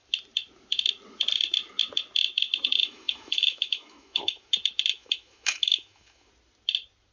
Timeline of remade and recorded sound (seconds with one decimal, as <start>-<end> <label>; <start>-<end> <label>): 0.0-2.8 recorded; 2.8-4.5 remade; 4.5-4.9 recorded; 4.9-6.3 remade; 6.3-7.1 recorded